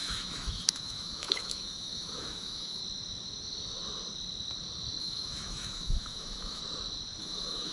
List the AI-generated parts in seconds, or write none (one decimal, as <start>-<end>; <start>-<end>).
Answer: 0.0-2.8; 5.0-6.6; 7.2-7.7